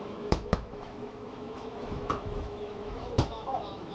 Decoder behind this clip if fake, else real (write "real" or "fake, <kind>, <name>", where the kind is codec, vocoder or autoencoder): fake, autoencoder, DAC-VAE